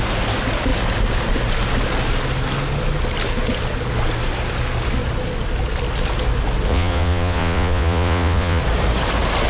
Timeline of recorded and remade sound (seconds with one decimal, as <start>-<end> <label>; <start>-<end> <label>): 0.0-6.7 recorded; 6.7-8.6 remade; 8.6-9.5 recorded